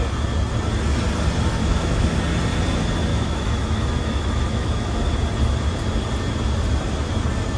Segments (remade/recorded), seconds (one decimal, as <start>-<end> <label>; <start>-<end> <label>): 0.0-1.5 recorded; 1.5-2.0 remade; 2.0-3.1 recorded; 3.1-5.2 remade; 5.2-7.6 recorded